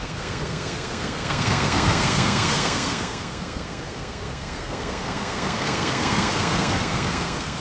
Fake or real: fake